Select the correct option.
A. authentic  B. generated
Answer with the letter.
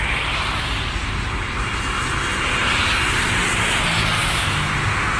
A